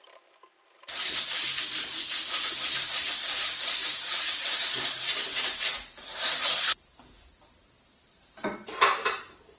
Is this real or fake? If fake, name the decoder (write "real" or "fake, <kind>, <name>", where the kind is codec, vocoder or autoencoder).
fake, vocoder, BigVGAN v2